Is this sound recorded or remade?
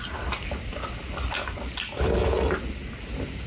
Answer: recorded